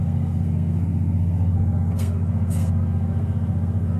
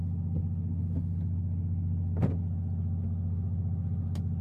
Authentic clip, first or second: second